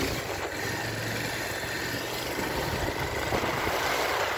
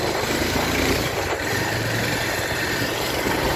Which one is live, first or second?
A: first